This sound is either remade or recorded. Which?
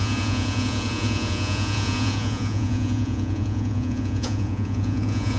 remade